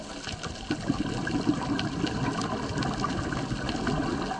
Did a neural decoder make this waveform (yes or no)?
no